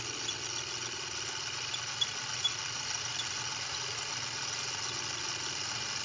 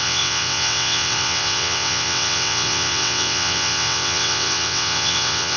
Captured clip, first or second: first